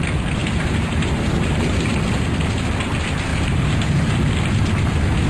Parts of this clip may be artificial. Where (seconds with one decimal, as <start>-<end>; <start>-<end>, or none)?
0.4-2.2; 3.3-4.2